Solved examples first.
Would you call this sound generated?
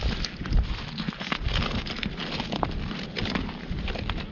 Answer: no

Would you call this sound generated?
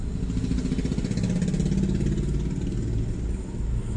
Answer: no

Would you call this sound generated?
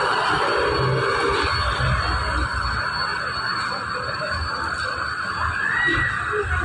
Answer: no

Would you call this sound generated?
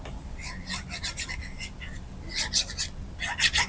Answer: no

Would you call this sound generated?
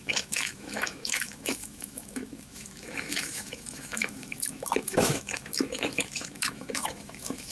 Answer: yes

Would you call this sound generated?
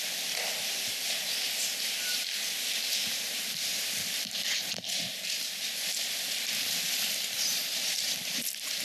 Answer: yes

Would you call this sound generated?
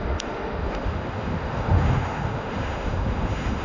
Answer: yes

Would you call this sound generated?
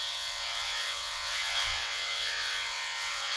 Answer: yes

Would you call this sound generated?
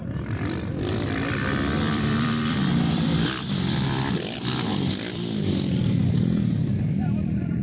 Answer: yes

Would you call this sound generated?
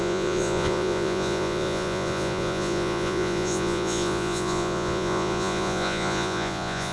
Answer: yes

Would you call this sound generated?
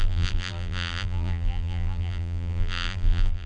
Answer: yes